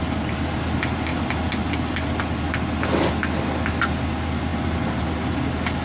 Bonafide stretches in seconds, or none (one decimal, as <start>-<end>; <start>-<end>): 0.0-5.8